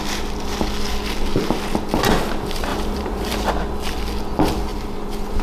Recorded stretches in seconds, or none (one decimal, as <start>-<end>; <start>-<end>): 0.0-2.7; 3.5-4.7